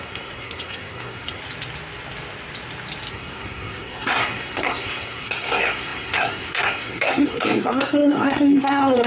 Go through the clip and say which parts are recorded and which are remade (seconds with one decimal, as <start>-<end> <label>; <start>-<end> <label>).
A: 0.0-1.4 remade; 1.4-3.1 recorded; 3.1-9.1 remade